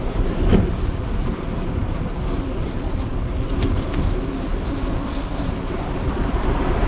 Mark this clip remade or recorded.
recorded